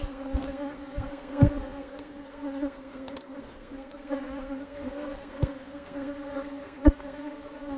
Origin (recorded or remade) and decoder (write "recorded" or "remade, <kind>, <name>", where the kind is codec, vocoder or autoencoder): remade, codec, SNAC